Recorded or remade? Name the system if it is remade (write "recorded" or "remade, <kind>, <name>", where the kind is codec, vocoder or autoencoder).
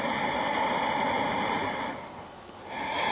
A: recorded